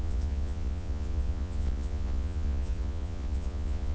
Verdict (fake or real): fake